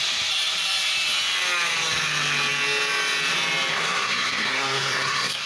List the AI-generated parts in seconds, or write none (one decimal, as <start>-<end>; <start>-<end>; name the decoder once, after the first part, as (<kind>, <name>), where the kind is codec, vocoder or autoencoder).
3.7-5.5 (codec, SNAC)